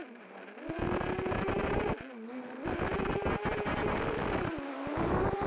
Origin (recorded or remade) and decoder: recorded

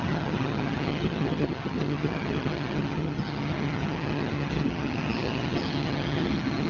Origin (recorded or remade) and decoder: remade, vocoder, HiFi-GAN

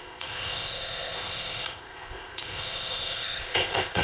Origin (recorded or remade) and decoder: remade, codec, ZipCodec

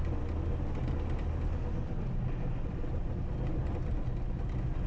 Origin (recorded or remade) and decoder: recorded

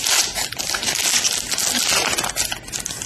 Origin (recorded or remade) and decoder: recorded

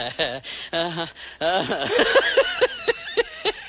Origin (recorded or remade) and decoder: recorded